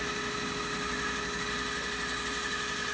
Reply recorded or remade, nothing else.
recorded